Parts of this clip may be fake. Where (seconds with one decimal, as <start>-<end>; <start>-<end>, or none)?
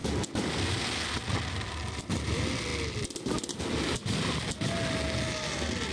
none